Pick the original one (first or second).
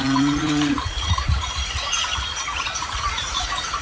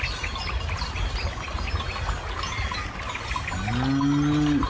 second